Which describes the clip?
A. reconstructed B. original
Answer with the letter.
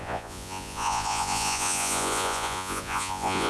A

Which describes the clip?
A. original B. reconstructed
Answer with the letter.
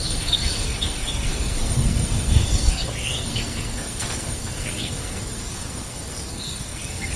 B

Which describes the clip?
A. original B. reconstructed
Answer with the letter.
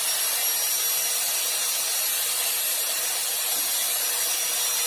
A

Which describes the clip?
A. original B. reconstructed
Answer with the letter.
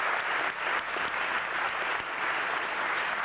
A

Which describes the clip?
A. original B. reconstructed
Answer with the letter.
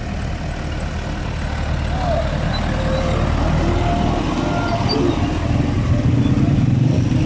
A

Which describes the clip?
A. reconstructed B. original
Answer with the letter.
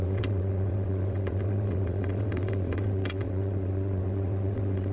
A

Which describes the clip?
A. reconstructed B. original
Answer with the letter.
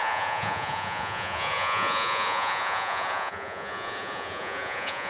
A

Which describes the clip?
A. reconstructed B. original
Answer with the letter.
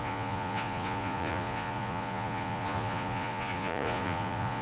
A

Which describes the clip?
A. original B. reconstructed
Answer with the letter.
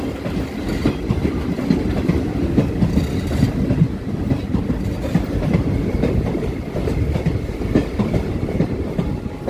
A